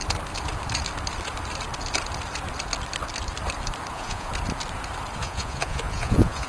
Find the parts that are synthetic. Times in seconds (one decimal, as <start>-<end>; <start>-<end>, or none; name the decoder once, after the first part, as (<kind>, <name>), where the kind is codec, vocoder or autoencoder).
3.9-4.3 (vocoder, Vocos); 5.2-6.5